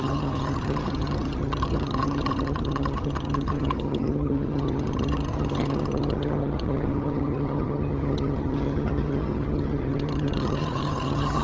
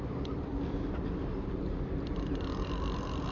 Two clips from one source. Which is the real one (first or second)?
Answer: second